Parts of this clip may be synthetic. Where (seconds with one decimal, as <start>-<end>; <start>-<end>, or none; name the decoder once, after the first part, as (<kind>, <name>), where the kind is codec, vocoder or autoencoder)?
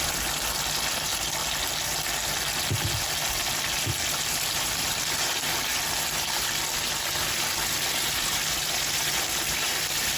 0.0-1.4 (vocoder, BigVGAN v2); 4.3-5.7; 7.2-10.2